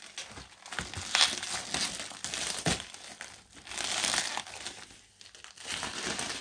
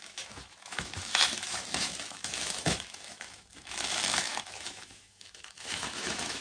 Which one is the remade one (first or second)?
second